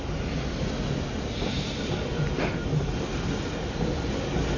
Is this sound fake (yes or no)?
no